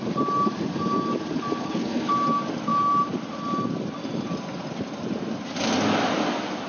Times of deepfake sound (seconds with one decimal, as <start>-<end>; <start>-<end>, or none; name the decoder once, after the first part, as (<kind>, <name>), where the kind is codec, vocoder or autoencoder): 1.6-2.1 (codec, HILCodec)